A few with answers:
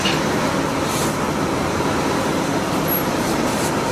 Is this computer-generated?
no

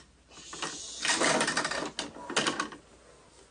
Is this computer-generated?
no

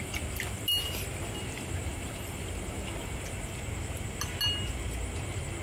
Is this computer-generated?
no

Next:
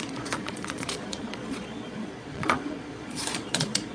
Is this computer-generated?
yes